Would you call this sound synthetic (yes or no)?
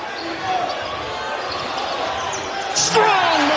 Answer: no